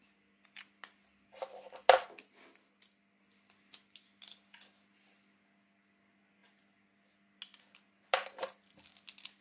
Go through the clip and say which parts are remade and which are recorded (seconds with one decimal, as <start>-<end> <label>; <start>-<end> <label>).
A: 0.0-9.4 recorded